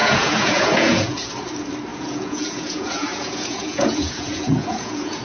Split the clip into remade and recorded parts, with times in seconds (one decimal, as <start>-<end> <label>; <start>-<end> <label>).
0.0-1.3 remade; 1.3-1.9 recorded; 1.9-5.2 remade